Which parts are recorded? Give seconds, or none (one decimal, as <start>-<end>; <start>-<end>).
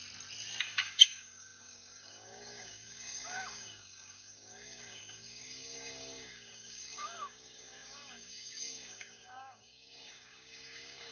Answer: 0.0-0.6